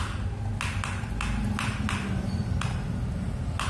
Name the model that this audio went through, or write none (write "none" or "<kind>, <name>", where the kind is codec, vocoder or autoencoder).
none